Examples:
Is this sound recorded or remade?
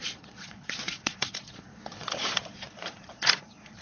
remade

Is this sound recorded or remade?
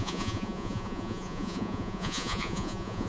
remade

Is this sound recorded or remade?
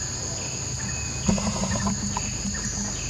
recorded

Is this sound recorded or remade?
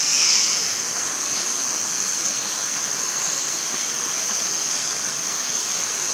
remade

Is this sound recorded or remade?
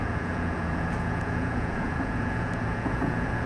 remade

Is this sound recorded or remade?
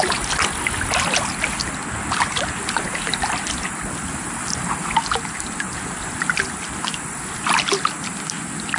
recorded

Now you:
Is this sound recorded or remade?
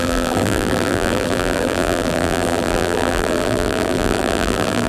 remade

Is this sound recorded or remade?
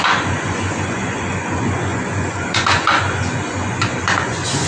remade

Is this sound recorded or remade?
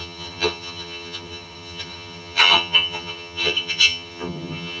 remade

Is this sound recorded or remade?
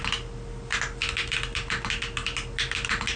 recorded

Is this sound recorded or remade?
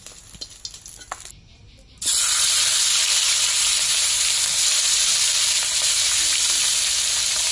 recorded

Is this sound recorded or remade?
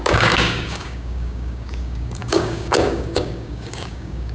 remade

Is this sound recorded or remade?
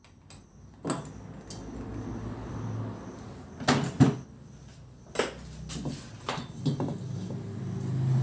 recorded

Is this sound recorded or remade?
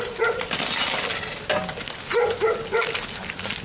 recorded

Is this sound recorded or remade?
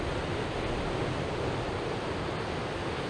recorded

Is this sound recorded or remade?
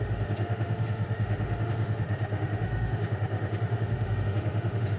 remade